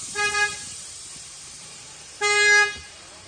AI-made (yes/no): yes